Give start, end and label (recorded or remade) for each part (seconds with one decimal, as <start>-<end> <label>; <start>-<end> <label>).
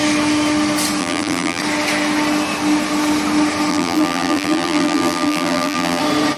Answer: 0.0-1.0 recorded; 1.0-1.6 remade; 1.6-3.7 recorded; 3.7-6.0 remade; 6.0-6.4 recorded